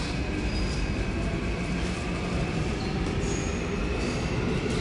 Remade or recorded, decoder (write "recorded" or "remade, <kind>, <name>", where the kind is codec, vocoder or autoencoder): recorded